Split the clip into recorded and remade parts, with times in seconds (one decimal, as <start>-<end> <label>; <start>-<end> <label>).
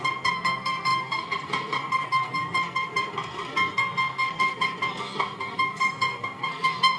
0.0-7.0 remade